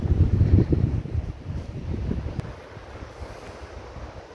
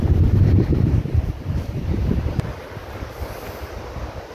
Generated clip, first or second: second